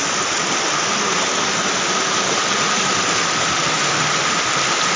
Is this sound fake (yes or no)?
no